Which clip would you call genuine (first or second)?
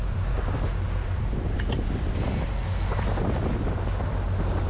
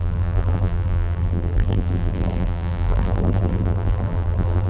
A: first